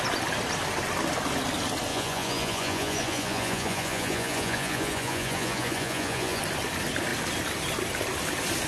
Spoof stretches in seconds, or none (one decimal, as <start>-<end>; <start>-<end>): 1.9-6.4